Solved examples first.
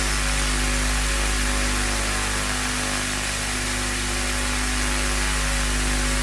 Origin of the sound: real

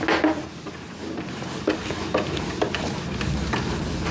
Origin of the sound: real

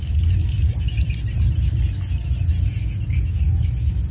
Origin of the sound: real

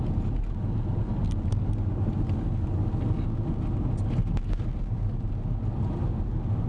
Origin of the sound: real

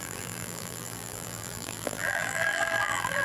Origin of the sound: fake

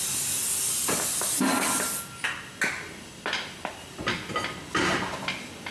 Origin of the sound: real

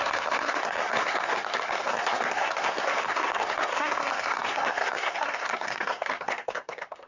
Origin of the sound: fake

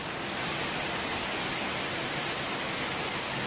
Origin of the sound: real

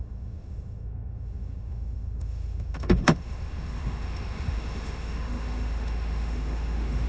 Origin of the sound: fake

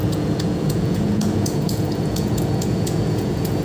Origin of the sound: fake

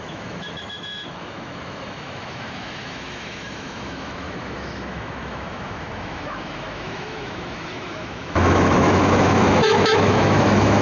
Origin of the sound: fake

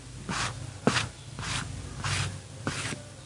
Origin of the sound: real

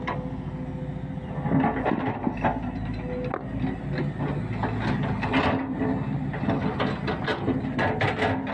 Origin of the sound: real